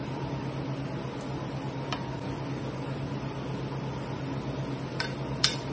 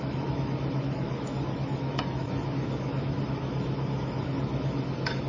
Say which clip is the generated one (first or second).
second